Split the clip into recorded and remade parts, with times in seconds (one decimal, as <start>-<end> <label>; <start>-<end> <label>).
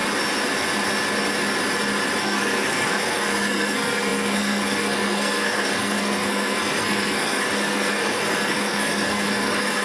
0.0-2.2 recorded; 2.2-9.8 remade